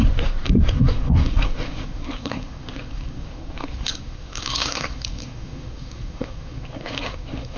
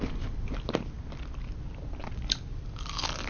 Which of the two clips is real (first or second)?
second